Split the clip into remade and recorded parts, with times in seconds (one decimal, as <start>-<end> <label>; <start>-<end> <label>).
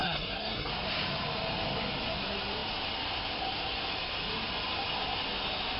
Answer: 0.0-0.7 remade; 0.7-5.8 recorded